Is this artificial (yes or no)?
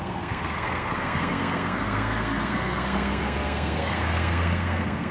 yes